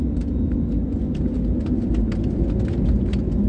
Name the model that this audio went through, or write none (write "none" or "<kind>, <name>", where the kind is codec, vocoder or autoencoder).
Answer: none